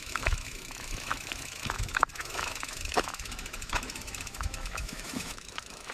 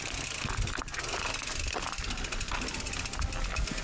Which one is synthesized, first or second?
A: first